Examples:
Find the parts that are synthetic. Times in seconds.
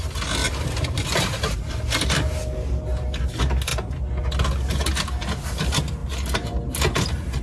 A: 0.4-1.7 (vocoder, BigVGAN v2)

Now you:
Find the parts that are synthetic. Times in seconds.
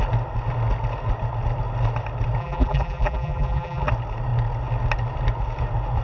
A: 2.4-3.9 (vocoder, BigVGAN v2)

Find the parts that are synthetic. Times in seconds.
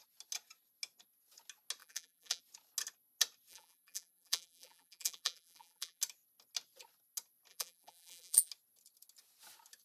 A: 1.8-2.4 (vocoder, BigVGAN v2); 3.5-6.0; 7.5-8.5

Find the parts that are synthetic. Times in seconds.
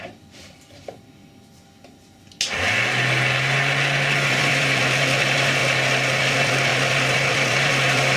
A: 0.0-1.2 (vocoder, BigVGAN v2); 4.3-5.6; 6.2-8.2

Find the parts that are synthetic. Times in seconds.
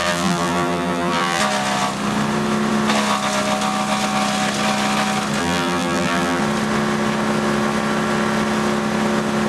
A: 0.0-1.4 (vocoder, BigVGAN v2); 5.4-6.4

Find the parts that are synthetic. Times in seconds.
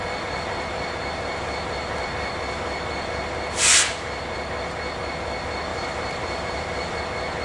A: 5.7-7.0 (vocoder, BigVGAN v2)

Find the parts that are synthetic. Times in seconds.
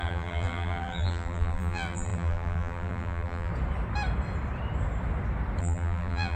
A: 0.0-3.5 (vocoder, BigVGAN v2); 5.6-6.4